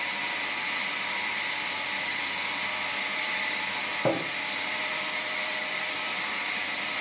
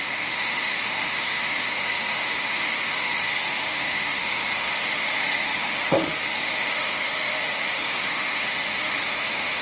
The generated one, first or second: second